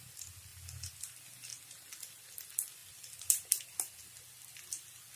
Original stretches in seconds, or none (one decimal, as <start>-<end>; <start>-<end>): 0.0-5.2